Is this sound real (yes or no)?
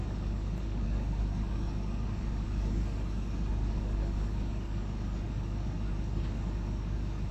no